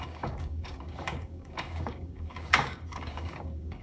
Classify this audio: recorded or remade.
remade